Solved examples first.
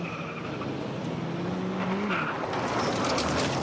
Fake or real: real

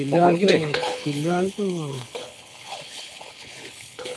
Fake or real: fake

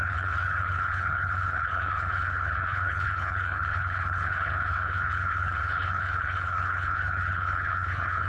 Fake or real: fake